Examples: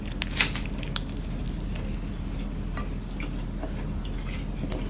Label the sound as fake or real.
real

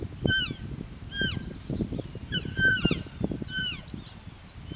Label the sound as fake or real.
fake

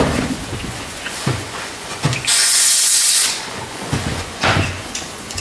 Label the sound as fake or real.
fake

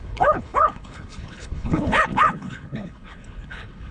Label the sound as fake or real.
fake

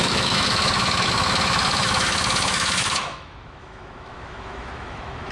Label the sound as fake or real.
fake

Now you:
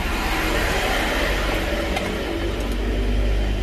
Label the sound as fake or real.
real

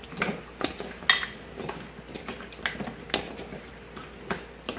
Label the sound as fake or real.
real